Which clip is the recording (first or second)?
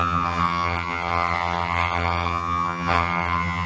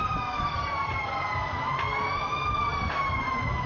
second